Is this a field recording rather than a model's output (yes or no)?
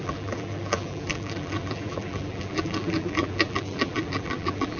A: no